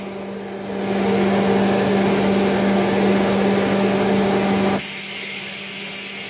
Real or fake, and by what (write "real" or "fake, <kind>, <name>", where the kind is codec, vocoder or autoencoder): real